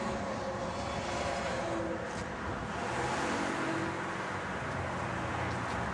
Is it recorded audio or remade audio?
recorded